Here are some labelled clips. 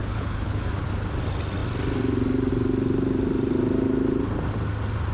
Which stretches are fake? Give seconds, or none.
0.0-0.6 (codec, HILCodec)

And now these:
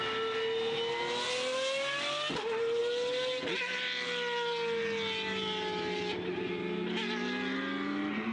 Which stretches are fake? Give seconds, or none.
none